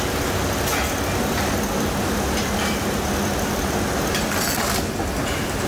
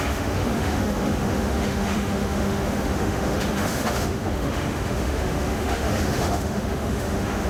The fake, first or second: second